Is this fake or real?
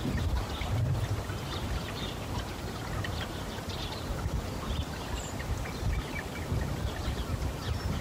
fake